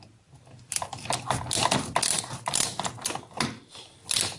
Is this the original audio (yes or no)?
yes